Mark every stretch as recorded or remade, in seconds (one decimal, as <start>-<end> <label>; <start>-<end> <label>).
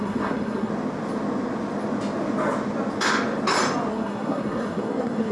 0.0-0.7 remade; 0.7-3.9 recorded; 3.9-5.3 remade